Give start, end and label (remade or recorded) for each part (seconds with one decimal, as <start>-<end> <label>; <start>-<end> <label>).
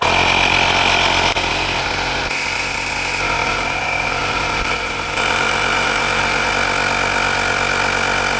0.0-3.4 recorded; 3.4-6.5 remade; 6.5-8.4 recorded